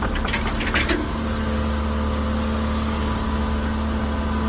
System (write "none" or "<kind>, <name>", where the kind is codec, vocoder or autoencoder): none